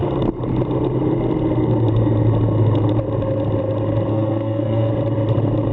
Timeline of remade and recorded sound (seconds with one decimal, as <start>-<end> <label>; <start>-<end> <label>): 0.0-4.1 recorded; 4.1-4.9 remade; 4.9-5.7 recorded